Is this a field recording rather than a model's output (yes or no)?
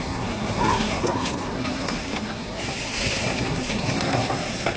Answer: no